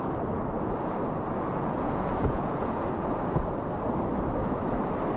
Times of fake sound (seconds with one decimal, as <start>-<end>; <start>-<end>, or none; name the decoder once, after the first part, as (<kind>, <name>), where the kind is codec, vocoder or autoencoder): 1.5-3.4 (vocoder, Vocos)